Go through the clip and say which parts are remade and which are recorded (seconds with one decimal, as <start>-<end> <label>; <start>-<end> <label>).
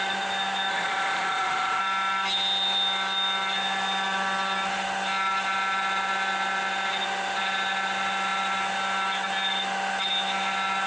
0.0-0.7 recorded; 0.7-1.8 remade; 1.8-10.9 recorded